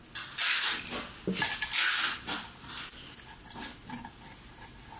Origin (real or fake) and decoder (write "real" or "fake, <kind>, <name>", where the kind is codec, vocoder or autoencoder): real